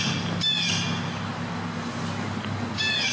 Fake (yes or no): no